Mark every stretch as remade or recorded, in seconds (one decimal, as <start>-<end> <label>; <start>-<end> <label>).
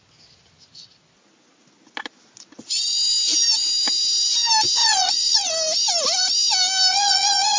0.0-4.8 recorded; 4.8-5.5 remade; 5.5-6.9 recorded; 6.9-7.6 remade